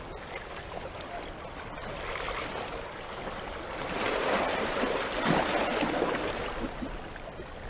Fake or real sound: real